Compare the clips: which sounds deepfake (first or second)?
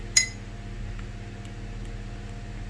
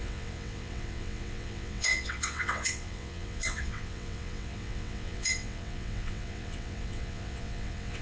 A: second